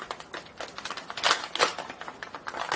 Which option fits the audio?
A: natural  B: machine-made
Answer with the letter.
A